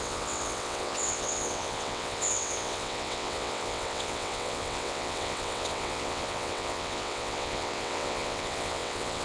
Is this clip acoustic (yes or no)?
no